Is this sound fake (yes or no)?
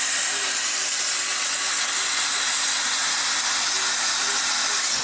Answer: no